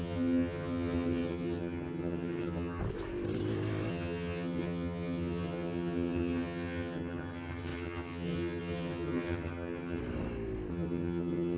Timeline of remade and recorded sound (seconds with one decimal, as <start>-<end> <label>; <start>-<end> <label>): 0.0-2.8 remade; 2.8-3.9 recorded; 3.9-10.0 remade; 10.0-10.7 recorded; 10.7-11.6 remade